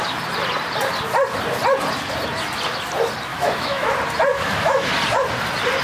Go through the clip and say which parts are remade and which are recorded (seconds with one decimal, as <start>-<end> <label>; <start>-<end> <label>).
0.0-3.3 recorded; 3.3-3.9 remade; 3.9-4.3 recorded; 4.3-4.9 remade; 4.9-5.8 recorded